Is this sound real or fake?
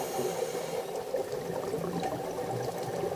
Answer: real